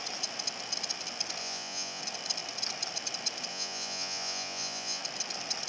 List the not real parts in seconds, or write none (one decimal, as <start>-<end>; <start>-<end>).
1.4-2.0; 3.5-5.0